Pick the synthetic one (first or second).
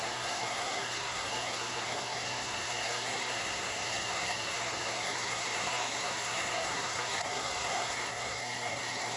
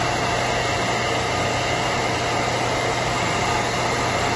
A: first